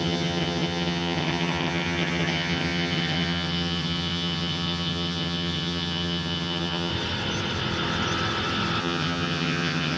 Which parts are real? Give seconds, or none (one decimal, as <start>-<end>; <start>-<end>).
6.9-8.8